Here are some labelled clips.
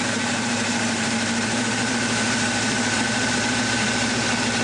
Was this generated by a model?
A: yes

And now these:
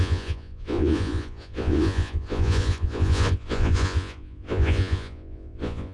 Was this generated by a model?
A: yes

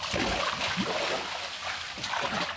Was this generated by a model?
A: no